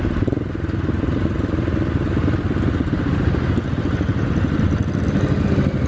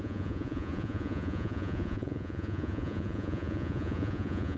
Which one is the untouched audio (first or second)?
first